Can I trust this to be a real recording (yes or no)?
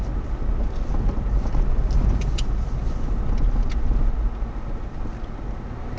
yes